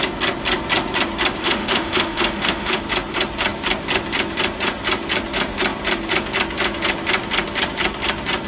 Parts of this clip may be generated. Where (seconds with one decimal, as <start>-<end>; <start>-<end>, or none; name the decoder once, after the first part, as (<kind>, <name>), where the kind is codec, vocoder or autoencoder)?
1.4-2.8 (autoencoder, DAC-VAE)